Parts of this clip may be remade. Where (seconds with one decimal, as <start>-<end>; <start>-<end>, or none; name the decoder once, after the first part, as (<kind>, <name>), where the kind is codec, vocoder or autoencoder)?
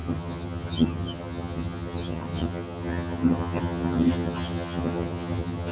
0.0-5.7 (vocoder, HiFi-GAN)